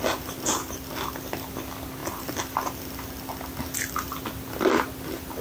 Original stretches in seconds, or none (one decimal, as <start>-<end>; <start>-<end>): 0.0-5.4